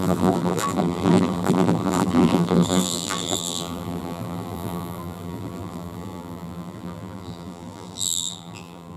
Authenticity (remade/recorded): remade